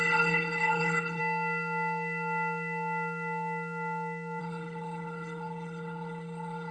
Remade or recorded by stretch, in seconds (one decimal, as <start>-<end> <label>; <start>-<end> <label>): 0.0-1.2 remade; 1.2-4.4 recorded; 4.4-6.7 remade